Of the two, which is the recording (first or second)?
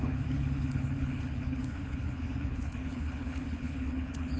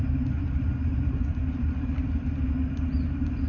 second